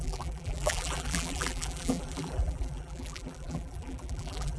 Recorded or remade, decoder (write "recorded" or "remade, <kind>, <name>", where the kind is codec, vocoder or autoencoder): remade, vocoder, BigVGAN v2